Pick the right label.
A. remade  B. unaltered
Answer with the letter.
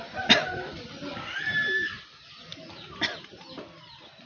B